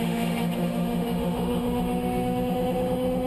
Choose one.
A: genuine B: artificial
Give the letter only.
B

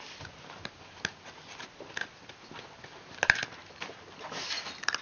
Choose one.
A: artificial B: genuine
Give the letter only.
B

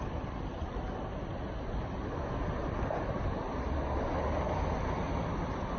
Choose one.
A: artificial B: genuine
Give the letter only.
B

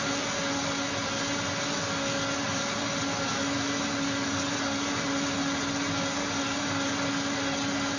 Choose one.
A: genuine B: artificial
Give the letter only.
A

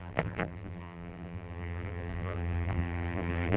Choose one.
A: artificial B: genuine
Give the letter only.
A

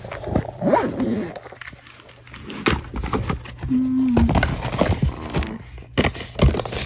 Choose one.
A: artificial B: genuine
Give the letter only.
B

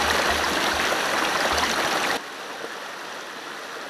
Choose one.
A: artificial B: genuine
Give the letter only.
B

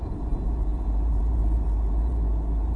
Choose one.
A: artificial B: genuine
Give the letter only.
A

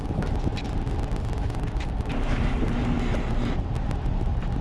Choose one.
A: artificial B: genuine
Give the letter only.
B